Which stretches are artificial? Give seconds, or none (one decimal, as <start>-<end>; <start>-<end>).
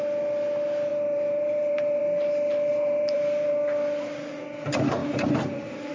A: 0.9-2.0; 2.7-3.5; 5.0-5.9